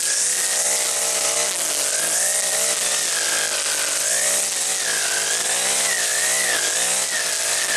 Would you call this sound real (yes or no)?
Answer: yes